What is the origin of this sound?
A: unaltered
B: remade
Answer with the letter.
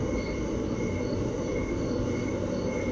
A